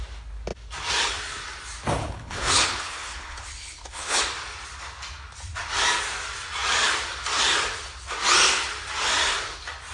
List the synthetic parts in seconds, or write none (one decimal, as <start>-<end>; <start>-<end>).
2.0-4.2